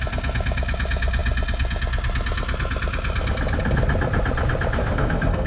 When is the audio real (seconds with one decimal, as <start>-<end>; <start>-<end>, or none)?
0.0-4.8